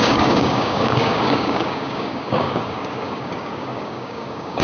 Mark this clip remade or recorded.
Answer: remade